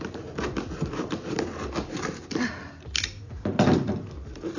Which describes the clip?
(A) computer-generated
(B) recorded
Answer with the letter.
A